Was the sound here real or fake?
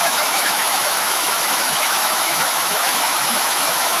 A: fake